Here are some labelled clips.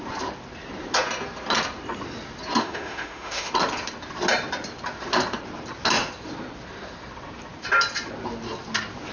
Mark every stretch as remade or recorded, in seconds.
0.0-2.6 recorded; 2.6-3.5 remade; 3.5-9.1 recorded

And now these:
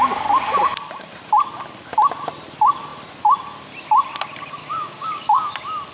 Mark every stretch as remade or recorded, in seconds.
0.0-4.6 recorded; 4.6-5.5 remade; 5.5-5.9 recorded

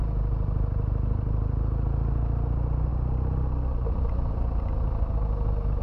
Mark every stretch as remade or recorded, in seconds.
0.0-5.8 recorded

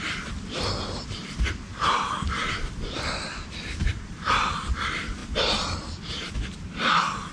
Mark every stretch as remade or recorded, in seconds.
0.0-7.3 remade